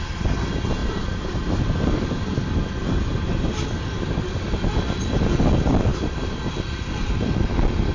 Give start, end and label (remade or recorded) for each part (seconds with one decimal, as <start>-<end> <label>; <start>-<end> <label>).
0.0-0.8 recorded; 0.8-1.6 remade; 1.6-5.9 recorded; 5.9-6.5 remade; 6.5-7.9 recorded